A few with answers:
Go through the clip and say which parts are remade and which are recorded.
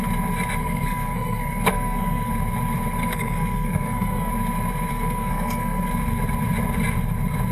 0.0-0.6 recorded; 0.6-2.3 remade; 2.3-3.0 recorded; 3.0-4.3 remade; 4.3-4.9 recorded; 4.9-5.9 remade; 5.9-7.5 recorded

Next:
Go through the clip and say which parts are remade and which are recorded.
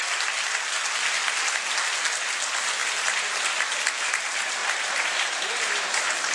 0.0-4.6 recorded; 4.6-6.3 remade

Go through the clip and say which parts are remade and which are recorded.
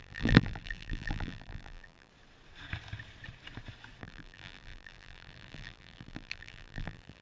0.0-2.1 remade; 2.1-4.0 recorded; 4.0-7.2 remade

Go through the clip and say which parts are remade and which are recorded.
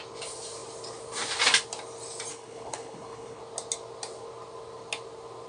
0.0-2.3 recorded; 2.3-3.4 remade; 3.4-5.5 recorded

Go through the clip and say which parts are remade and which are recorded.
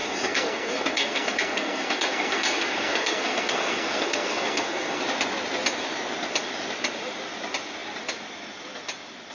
0.0-5.0 remade; 5.0-9.3 recorded